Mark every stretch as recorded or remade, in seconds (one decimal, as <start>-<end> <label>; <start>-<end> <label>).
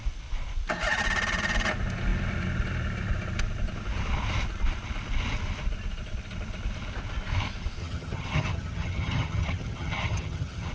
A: 0.0-7.8 recorded; 7.8-10.7 remade